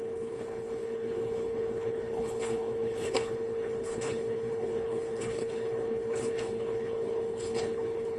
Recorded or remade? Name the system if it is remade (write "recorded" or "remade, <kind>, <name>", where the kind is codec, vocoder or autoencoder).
remade, codec, HILCodec